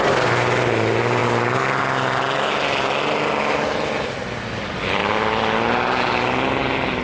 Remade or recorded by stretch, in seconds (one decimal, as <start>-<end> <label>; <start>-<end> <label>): 0.0-7.0 recorded